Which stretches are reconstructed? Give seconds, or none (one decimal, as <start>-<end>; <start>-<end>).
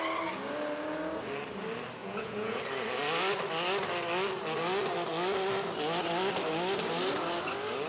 2.0-2.6